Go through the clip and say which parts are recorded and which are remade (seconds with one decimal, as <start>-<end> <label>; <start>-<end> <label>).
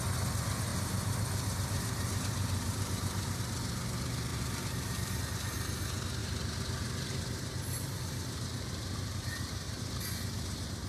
0.0-0.7 recorded; 0.7-3.4 remade; 3.4-4.3 recorded; 4.3-5.2 remade; 5.2-6.2 recorded; 6.2-9.9 remade; 9.9-10.9 recorded